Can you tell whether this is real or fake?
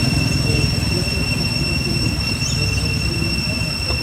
fake